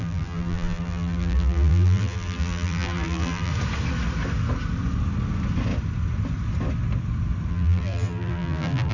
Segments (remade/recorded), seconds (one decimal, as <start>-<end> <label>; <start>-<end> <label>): 0.0-3.5 remade; 3.5-7.5 recorded; 7.5-8.9 remade